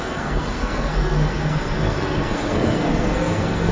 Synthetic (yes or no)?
yes